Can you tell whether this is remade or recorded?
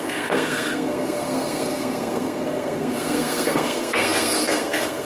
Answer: remade